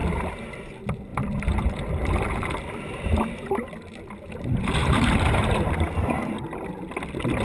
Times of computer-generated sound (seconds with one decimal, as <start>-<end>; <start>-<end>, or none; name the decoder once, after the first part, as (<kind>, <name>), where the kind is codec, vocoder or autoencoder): 0.0-0.6 (vocoder, BigVGAN v2); 1.1-3.5; 4.8-5.8